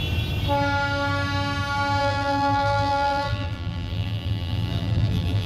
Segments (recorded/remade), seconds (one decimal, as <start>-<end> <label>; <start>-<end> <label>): 0.0-2.0 recorded; 2.0-5.5 remade

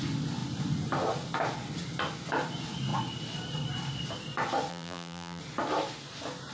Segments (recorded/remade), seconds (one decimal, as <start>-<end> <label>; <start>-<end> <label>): 0.0-4.7 recorded; 4.7-5.4 remade; 5.4-6.5 recorded

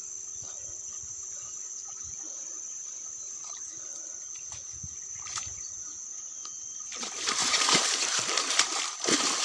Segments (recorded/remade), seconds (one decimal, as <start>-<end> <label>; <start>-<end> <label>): 0.0-0.9 recorded; 0.9-2.4 remade; 2.4-4.8 recorded; 4.8-6.0 remade; 6.0-7.4 recorded; 7.4-8.5 remade; 8.5-9.4 recorded